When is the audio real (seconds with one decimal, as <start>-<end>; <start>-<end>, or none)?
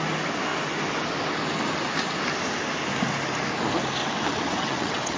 0.0-4.0